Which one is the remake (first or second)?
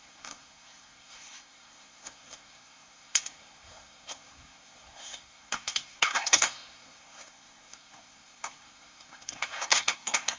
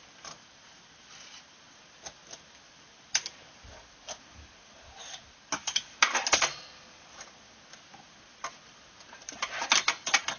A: first